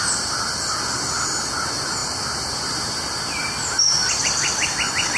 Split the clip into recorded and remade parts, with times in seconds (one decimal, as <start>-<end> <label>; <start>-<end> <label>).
0.0-5.2 recorded